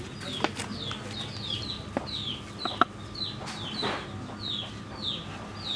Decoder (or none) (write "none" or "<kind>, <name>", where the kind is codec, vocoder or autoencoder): none